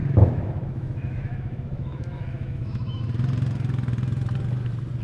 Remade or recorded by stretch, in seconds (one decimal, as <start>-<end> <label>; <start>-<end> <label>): 0.0-3.0 remade; 3.0-5.0 recorded